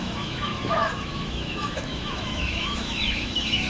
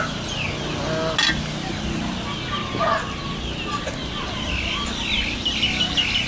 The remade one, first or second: first